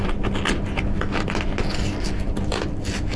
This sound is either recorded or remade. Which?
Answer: recorded